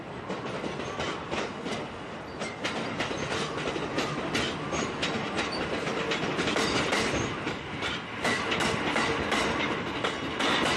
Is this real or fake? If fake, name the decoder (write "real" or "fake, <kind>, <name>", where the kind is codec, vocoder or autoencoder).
real